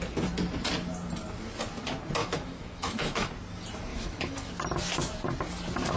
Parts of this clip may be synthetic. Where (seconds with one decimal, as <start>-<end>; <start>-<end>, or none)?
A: 2.2-3.3; 3.9-4.5